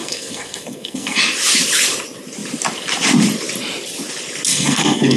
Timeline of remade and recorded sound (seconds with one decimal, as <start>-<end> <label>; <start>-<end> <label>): 0.0-1.2 remade; 1.2-4.5 recorded; 4.5-5.2 remade